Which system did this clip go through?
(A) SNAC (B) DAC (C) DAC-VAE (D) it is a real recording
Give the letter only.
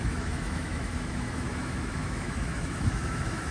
C